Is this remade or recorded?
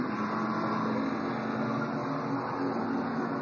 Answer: recorded